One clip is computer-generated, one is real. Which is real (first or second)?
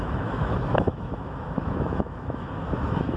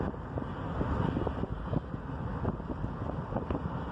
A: second